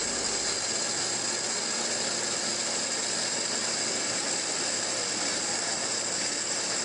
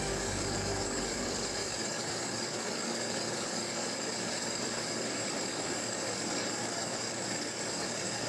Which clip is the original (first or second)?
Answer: first